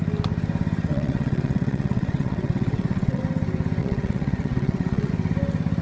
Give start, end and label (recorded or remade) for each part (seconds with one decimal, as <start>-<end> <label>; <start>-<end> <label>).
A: 0.0-0.9 recorded; 0.9-3.2 remade; 3.2-3.8 recorded; 3.8-5.1 remade; 5.1-5.8 recorded

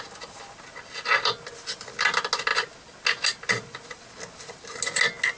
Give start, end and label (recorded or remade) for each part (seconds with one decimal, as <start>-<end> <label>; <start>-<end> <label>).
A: 0.0-5.4 recorded

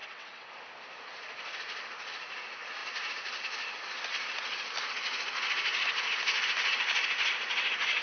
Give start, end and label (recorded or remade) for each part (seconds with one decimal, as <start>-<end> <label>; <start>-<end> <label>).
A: 0.0-0.5 remade; 0.5-8.0 recorded

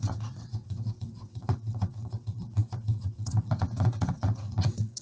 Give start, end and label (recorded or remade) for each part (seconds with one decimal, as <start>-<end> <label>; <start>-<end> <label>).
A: 0.0-5.0 remade

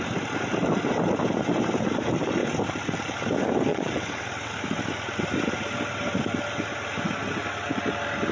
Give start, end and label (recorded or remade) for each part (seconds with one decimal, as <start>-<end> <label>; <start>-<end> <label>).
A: 0.0-3.7 recorded; 3.7-4.5 remade; 4.5-8.3 recorded